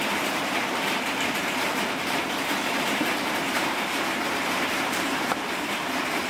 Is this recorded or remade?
remade